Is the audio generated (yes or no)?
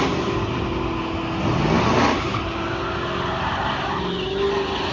no